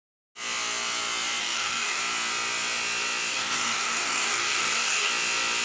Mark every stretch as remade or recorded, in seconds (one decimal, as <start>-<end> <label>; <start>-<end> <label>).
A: 0.0-1.4 recorded; 1.4-2.0 remade; 2.0-3.3 recorded; 3.3-5.1 remade; 5.1-5.6 recorded